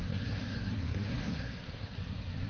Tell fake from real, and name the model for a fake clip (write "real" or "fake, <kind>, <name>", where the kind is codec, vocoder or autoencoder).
fake, codec, SNAC